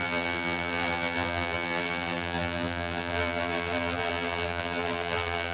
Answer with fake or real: fake